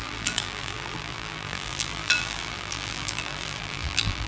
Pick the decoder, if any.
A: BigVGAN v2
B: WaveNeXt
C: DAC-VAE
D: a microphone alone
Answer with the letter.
A